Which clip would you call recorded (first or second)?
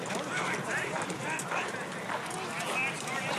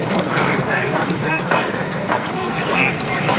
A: first